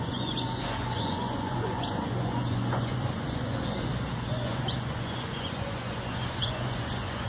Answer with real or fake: fake